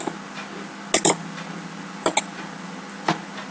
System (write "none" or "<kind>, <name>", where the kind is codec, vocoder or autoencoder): none